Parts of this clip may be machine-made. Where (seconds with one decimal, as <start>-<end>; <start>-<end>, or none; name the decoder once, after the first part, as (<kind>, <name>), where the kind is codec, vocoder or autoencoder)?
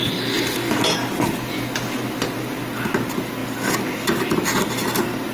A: none